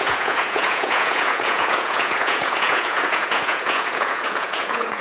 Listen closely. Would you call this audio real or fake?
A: fake